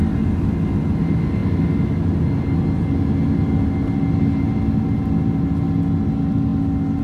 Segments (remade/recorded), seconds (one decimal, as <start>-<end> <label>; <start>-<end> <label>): 0.0-7.0 recorded